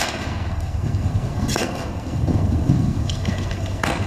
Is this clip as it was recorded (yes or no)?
no